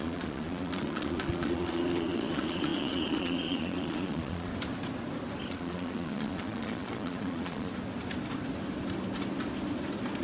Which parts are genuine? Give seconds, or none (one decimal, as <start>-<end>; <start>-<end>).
4.5-5.5; 7.7-10.2